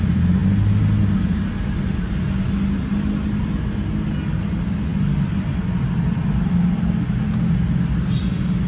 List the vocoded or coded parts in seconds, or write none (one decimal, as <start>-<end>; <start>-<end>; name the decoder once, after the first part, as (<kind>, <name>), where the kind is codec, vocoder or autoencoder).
none